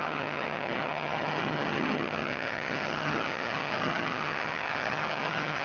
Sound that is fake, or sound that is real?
fake